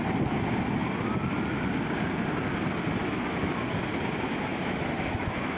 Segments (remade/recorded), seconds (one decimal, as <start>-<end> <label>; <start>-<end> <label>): 0.0-3.0 recorded; 3.0-3.5 remade; 3.5-4.5 recorded; 4.5-5.6 remade